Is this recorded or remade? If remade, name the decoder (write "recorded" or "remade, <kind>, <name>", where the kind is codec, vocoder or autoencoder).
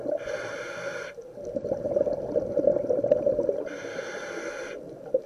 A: recorded